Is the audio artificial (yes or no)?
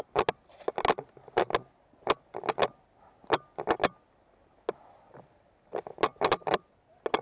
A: no